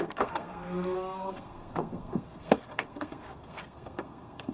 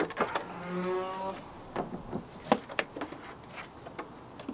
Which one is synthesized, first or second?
first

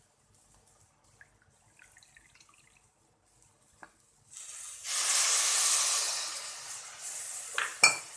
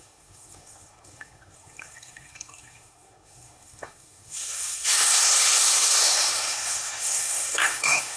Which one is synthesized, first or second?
second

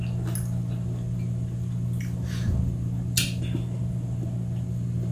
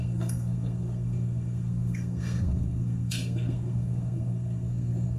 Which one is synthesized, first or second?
second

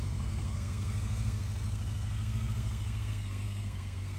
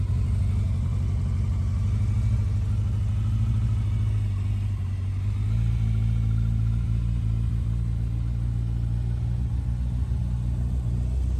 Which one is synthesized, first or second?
first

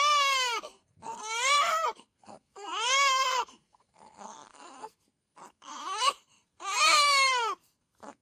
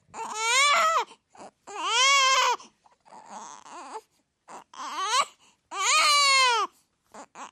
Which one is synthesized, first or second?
first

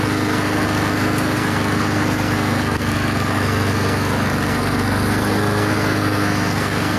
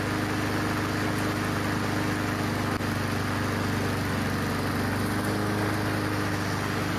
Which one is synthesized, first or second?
first